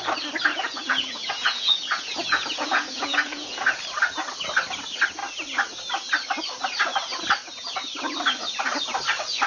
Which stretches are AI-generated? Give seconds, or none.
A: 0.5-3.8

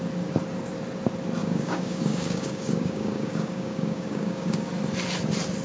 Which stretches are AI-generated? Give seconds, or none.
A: 1.4-4.7

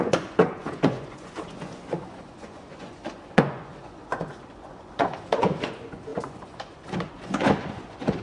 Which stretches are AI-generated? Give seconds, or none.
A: 0.0-8.2

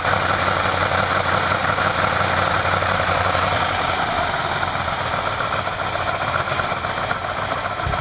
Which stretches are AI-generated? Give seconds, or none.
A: 1.6-4.0

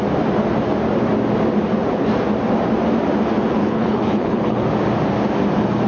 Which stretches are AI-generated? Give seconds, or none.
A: 3.6-4.7

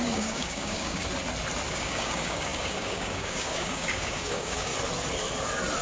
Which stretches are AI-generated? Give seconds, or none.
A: 0.0-1.0; 1.7-4.7

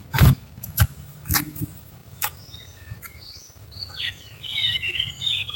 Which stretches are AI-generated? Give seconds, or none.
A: 0.0-5.6

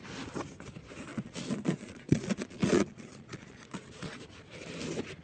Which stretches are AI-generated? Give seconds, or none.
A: 1.1-4.2